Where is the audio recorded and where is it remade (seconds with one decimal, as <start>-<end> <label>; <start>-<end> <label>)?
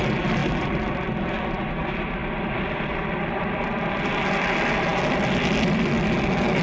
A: 0.0-0.4 recorded; 0.4-0.9 remade; 0.9-6.6 recorded